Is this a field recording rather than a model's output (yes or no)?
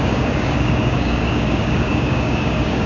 no